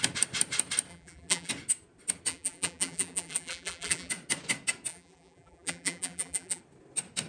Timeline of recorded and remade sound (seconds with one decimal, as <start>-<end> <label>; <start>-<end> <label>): 0.0-0.9 recorded; 0.9-1.5 remade; 1.5-2.3 recorded; 2.3-4.1 remade; 4.1-4.9 recorded; 4.9-6.6 remade; 6.6-7.3 recorded